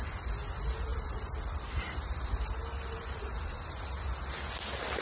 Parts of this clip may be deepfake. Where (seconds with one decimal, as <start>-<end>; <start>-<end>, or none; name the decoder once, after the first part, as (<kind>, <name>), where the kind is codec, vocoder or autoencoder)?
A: 0.9-3.9 (vocoder, BigVGAN v2)